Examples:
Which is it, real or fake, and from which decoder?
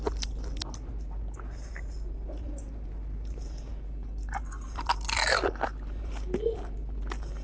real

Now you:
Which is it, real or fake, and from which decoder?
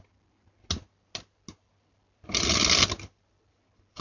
real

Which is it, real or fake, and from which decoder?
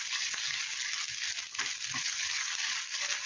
real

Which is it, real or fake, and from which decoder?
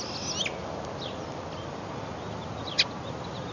real